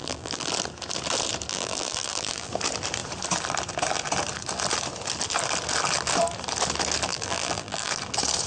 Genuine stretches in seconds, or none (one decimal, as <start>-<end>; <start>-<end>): 0.5-1.5; 2.5-7.1; 7.9-8.5